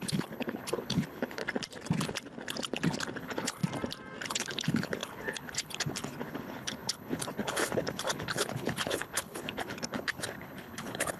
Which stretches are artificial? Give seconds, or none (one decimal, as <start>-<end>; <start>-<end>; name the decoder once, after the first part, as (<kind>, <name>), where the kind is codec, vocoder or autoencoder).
0.0-1.4 (codec, HILCodec); 3.2-3.6; 4.3-11.2